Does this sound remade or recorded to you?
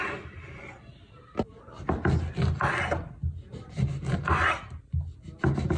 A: recorded